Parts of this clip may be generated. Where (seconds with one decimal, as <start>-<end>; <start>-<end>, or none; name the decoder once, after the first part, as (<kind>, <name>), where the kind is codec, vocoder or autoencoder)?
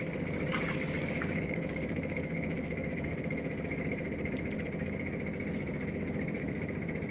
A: 0.5-3.2 (codec, DAC)